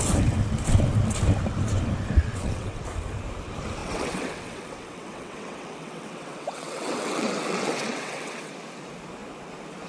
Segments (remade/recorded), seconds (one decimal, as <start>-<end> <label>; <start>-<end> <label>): 0.0-2.2 recorded; 2.2-2.8 remade; 2.8-3.8 recorded; 3.8-8.5 remade; 8.5-9.9 recorded

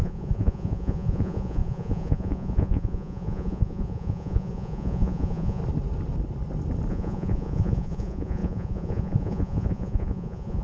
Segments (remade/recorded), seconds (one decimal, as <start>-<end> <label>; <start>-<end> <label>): 0.0-5.6 remade; 5.6-6.9 recorded; 6.9-10.6 remade

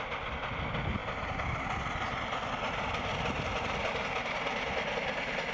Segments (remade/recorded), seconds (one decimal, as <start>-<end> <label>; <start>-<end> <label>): 0.0-5.5 recorded